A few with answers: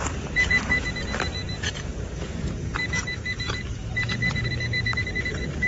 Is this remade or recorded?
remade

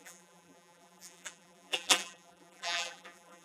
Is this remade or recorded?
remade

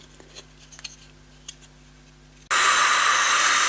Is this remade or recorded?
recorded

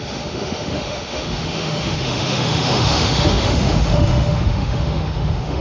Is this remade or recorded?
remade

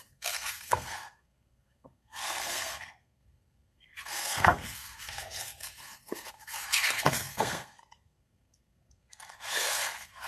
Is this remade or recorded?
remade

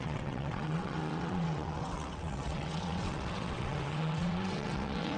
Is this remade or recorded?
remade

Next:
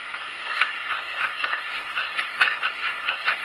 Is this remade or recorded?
remade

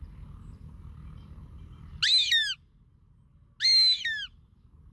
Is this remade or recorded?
recorded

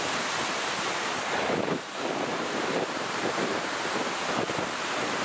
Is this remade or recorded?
remade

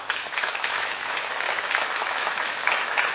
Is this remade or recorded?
remade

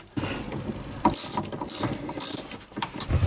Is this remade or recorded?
recorded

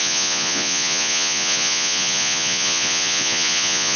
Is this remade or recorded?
remade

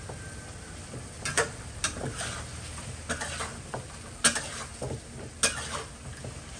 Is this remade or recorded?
recorded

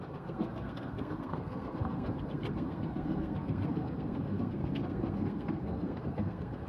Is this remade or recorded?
remade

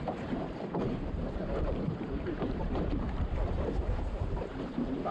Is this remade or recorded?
remade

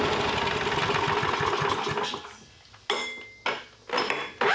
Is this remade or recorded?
recorded